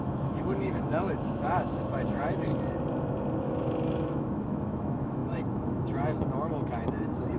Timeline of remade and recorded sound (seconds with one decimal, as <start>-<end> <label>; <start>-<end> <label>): 0.0-2.5 remade; 2.5-3.4 recorded; 3.4-7.4 remade